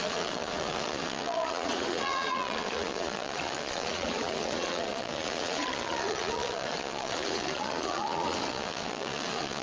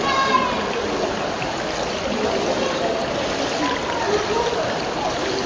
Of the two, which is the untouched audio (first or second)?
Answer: second